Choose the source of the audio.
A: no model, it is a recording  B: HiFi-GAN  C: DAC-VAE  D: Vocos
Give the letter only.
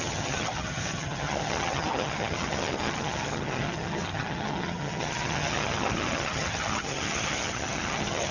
B